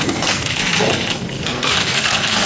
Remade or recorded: remade